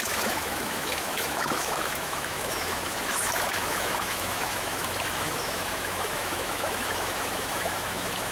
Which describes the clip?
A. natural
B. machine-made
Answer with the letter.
B